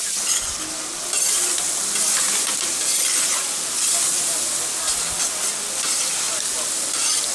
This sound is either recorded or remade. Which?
recorded